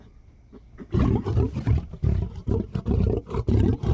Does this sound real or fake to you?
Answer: real